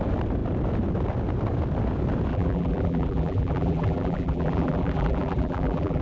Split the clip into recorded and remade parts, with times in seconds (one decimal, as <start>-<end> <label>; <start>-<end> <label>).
0.0-2.3 recorded; 2.3-6.0 remade